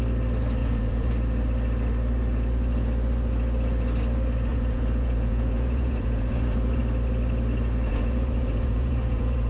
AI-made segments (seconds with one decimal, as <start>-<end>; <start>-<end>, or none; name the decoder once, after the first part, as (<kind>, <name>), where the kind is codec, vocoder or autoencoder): 0.6-1.1 (vocoder, Vocos); 4.5-6.8; 7.9-9.5